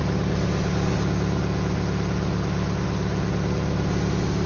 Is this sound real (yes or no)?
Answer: yes